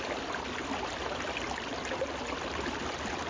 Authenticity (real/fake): real